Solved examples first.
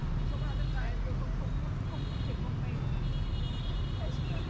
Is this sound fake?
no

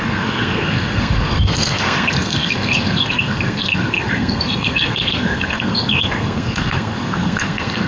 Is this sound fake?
yes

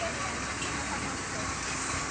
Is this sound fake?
no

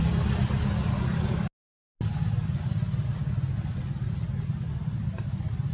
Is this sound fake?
no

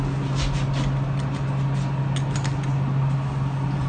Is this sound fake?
no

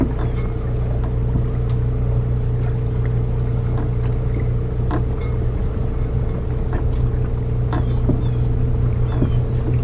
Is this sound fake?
no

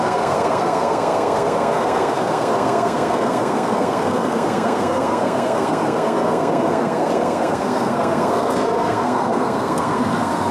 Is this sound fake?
yes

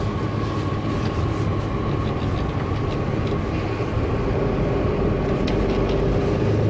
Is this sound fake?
no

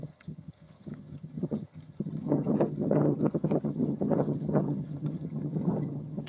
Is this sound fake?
yes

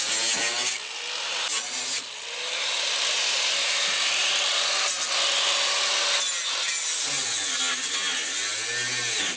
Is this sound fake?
no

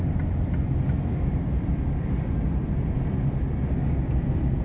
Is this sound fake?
no